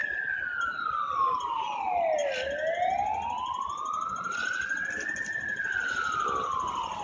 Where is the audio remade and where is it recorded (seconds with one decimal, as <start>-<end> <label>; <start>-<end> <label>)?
0.0-7.0 recorded